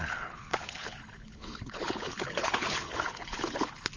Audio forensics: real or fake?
fake